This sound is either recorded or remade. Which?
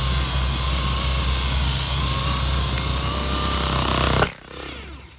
recorded